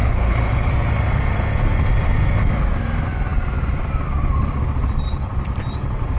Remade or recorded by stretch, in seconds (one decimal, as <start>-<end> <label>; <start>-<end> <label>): 0.0-0.7 remade; 0.7-6.2 recorded